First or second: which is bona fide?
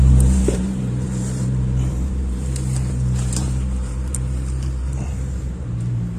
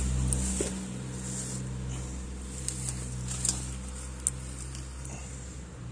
second